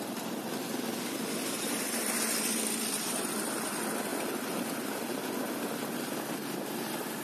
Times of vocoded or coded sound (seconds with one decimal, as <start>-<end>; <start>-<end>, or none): none